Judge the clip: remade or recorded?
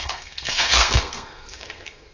remade